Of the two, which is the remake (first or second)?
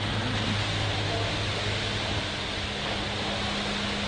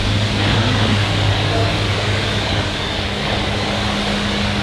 second